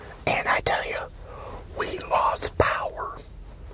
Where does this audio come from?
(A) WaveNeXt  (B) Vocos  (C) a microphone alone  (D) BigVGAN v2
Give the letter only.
C